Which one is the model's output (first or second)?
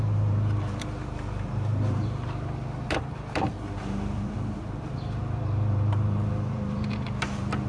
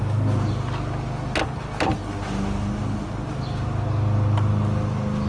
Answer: first